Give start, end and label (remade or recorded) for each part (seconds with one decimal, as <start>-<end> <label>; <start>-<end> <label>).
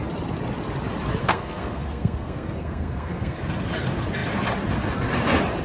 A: 0.0-1.2 recorded; 1.2-3.4 remade; 3.4-5.6 recorded